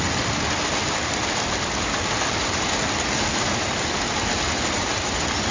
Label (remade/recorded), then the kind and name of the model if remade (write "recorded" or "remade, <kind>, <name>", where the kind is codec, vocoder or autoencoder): recorded